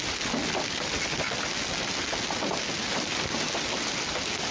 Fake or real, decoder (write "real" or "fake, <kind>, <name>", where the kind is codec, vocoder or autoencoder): real